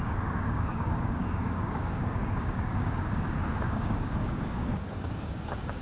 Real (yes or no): no